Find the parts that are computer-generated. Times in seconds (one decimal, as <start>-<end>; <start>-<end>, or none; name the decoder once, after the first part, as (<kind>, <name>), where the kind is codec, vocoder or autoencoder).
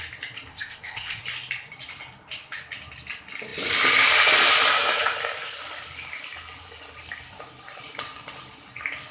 0.5-1.2 (codec, ZipCodec)